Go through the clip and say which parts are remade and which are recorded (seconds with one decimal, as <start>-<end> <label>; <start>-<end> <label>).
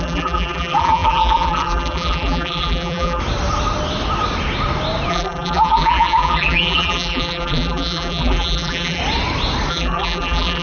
0.0-3.2 remade; 3.2-5.1 recorded; 5.1-9.0 remade; 9.0-9.7 recorded; 9.7-10.6 remade